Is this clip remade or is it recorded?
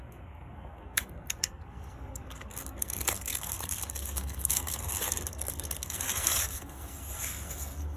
remade